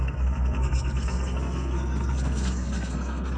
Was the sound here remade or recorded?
remade